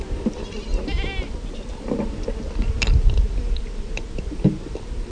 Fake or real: real